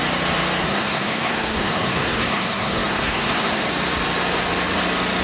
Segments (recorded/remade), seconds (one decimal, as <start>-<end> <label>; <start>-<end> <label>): 0.0-0.6 recorded; 0.6-3.7 remade; 3.7-5.2 recorded